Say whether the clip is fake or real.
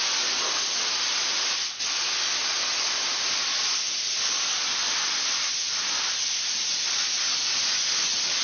real